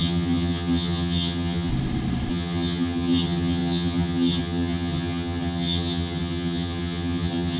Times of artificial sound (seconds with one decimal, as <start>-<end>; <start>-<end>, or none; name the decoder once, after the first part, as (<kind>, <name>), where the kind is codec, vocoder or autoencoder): 0.0-1.7 (vocoder, HiFi-GAN); 2.3-7.6